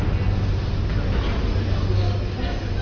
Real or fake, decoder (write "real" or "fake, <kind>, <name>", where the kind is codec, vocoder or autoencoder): real